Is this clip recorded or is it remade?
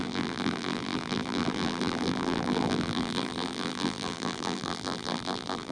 remade